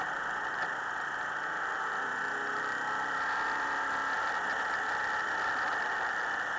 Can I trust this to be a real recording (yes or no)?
yes